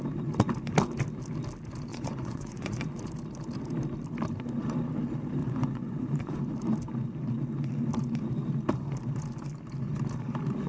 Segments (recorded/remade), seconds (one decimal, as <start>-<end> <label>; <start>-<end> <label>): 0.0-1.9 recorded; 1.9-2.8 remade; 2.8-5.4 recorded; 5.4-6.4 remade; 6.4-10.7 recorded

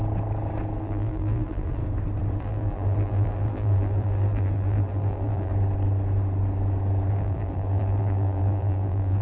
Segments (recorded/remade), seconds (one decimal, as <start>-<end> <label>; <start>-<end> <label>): 0.0-0.8 recorded; 0.8-1.8 remade; 1.8-2.4 recorded; 2.4-5.5 remade; 5.5-7.1 recorded; 7.1-9.2 remade

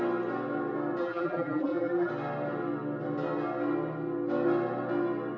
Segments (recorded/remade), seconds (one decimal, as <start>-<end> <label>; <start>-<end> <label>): 0.0-1.0 recorded; 1.0-2.1 remade; 2.1-5.4 recorded